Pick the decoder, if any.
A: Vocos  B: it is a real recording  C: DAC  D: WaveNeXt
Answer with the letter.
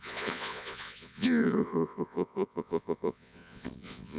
A